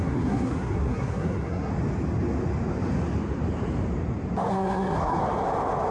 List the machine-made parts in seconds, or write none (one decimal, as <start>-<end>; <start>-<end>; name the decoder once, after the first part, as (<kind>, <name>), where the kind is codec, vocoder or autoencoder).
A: 0.0-1.7 (codec, SNAC); 4.5-5.2